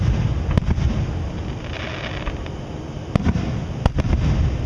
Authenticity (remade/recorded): recorded